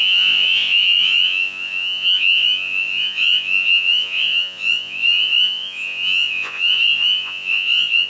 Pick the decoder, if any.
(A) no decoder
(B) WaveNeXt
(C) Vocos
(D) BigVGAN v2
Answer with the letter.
C